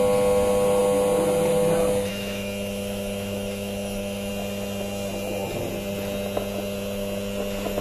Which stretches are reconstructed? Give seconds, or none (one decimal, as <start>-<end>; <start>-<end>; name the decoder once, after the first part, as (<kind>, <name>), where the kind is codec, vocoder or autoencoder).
2.1-4.3 (autoencoder, DAC-VAE)